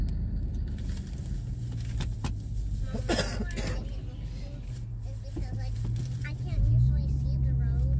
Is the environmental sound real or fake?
real